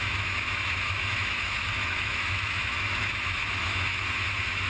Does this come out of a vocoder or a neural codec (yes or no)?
yes